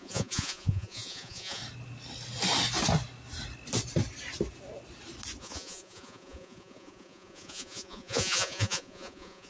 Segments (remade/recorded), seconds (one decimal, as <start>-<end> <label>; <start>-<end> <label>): 0.0-1.6 remade; 1.6-5.4 recorded; 5.4-9.5 remade